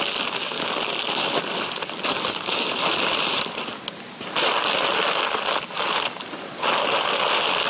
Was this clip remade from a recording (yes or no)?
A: no